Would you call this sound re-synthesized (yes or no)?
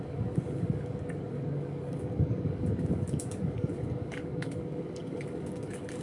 yes